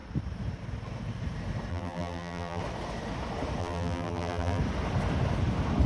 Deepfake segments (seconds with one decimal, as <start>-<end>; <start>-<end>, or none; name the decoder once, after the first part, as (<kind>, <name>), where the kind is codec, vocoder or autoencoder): 1.7-2.6 (vocoder, BigVGAN v2); 3.6-4.6